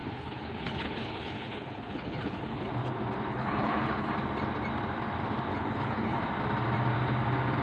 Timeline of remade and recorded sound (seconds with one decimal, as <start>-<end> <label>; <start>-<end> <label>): 0.0-2.7 remade; 2.7-3.3 recorded; 3.3-4.1 remade; 4.1-5.5 recorded; 5.5-6.2 remade; 6.2-7.6 recorded